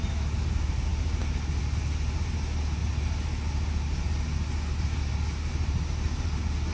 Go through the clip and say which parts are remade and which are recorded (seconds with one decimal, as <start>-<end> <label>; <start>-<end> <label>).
0.0-6.7 recorded